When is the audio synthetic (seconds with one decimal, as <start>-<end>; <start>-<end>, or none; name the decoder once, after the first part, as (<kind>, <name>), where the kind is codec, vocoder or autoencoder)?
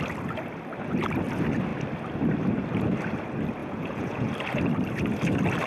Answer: 3.6-4.3 (vocoder, Vocos)